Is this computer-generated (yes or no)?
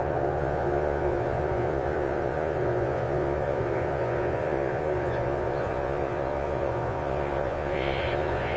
yes